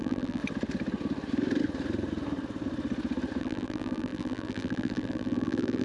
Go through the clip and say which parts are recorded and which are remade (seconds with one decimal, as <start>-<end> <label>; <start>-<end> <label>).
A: 0.0-0.4 remade; 0.4-3.4 recorded; 3.4-5.8 remade